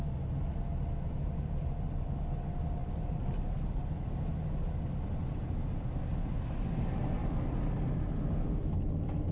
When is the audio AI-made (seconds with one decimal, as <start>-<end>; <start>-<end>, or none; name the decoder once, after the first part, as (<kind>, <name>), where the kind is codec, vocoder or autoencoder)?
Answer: none